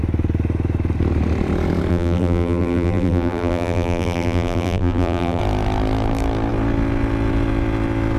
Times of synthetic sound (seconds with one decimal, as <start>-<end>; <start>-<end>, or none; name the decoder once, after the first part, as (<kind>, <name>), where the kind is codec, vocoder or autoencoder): 1.9-5.4 (vocoder, BigVGAN v2)